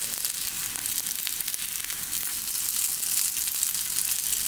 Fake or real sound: real